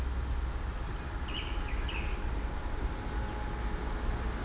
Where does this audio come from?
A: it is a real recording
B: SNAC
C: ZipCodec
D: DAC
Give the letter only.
A